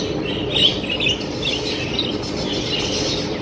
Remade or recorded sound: recorded